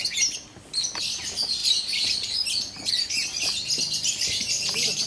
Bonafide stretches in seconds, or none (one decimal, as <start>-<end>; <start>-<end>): 0.0-5.1